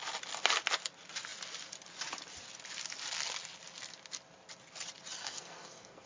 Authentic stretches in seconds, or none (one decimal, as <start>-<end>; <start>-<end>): 0.0-5.2